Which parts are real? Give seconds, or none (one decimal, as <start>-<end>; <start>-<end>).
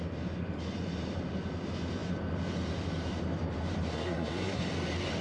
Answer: 0.0-3.9; 4.6-5.2